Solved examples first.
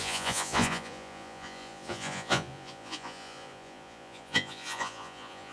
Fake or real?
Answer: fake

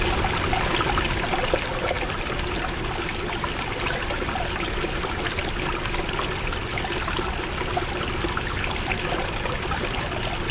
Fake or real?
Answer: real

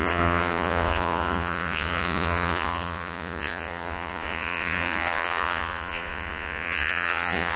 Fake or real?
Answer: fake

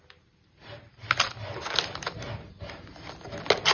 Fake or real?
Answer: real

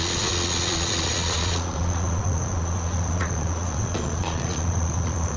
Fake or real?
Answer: fake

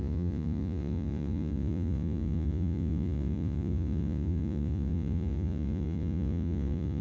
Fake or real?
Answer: fake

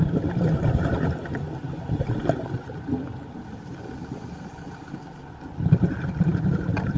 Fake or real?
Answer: real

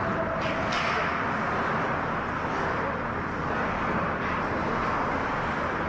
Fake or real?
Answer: real